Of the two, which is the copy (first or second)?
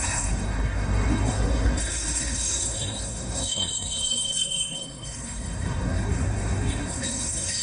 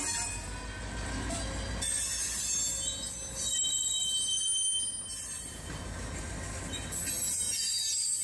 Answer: first